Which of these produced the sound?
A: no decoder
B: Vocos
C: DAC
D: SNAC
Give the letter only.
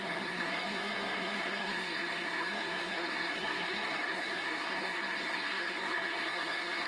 D